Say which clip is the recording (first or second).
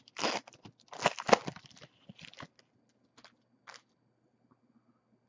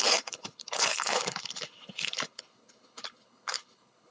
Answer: first